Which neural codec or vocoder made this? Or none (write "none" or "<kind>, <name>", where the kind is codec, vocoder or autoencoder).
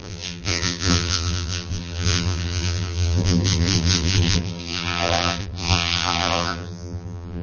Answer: vocoder, BigVGAN v2